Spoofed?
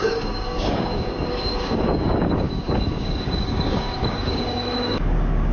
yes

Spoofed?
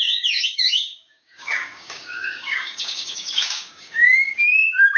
yes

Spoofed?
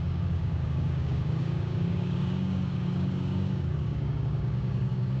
yes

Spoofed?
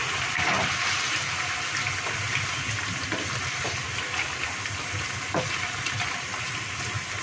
no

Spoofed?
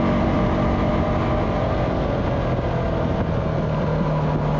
no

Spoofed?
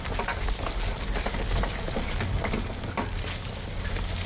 no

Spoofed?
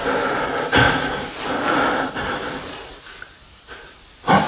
no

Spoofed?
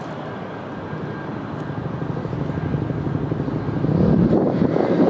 no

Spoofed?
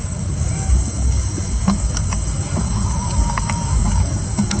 yes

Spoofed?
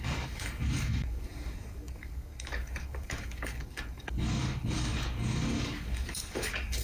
yes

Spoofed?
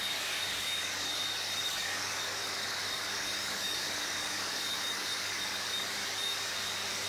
yes